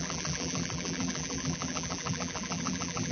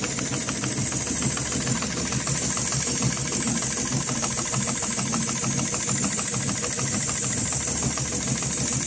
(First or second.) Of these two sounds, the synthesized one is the first